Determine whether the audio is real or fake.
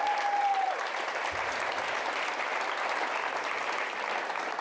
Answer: real